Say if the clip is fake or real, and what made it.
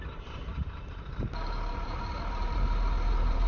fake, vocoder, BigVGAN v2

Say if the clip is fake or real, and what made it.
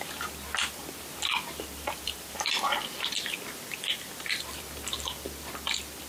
fake, vocoder, BigVGAN v2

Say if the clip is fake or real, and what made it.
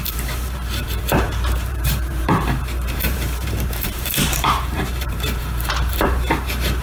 fake, vocoder, BigVGAN v2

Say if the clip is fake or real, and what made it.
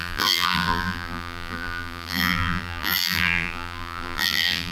fake, vocoder, BigVGAN v2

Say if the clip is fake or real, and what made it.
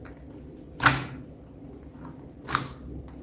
real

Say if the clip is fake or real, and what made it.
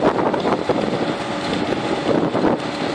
real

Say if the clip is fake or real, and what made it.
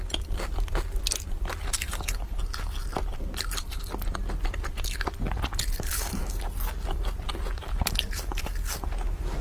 real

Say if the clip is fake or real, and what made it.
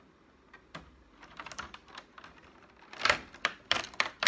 real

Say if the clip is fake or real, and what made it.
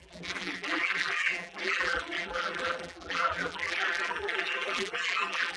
fake, vocoder, BigVGAN v2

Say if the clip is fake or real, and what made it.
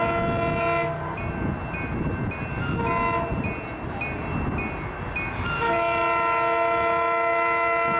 real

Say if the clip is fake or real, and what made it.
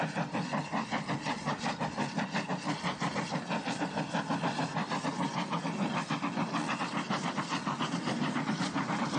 real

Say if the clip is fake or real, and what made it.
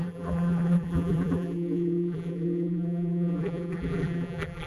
fake, vocoder, BigVGAN v2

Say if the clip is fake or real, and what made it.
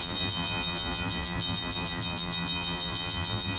fake, vocoder, BigVGAN v2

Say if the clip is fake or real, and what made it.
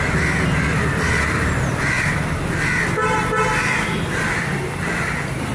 real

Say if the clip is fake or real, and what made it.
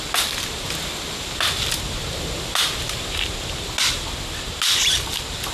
real